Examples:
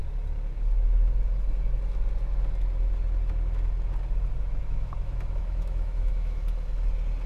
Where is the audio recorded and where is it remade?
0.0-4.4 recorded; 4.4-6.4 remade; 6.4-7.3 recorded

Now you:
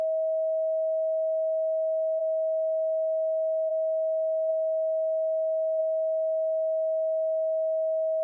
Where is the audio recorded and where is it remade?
0.0-2.2 recorded; 2.2-3.7 remade; 3.7-4.5 recorded; 4.5-5.8 remade; 5.8-8.2 recorded

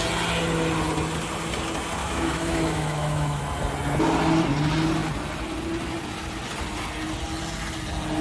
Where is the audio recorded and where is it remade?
0.0-2.0 recorded; 2.0-3.4 remade; 3.4-8.2 recorded

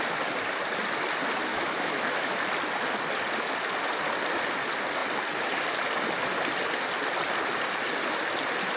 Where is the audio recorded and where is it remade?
0.0-1.5 recorded; 1.5-2.3 remade; 2.3-8.8 recorded

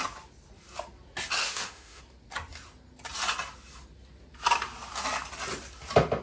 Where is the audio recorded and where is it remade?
0.0-1.4 recorded; 1.4-2.0 remade; 2.0-6.2 recorded

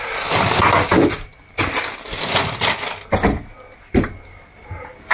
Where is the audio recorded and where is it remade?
0.0-5.1 recorded

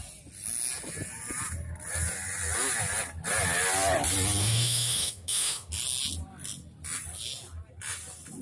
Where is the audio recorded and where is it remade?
0.0-4.4 recorded; 4.4-5.7 remade; 5.7-8.4 recorded